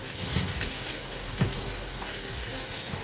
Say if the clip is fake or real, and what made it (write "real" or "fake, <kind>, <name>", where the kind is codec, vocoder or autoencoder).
fake, codec, DAC